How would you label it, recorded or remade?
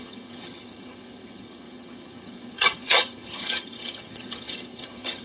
remade